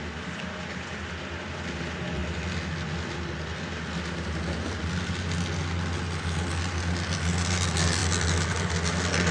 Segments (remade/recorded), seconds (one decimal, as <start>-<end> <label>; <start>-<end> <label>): 0.0-9.3 recorded